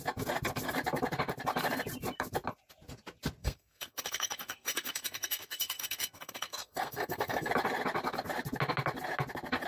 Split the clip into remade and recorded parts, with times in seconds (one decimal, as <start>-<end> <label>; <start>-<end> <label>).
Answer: 0.0-3.4 recorded; 3.4-7.5 remade; 7.5-9.7 recorded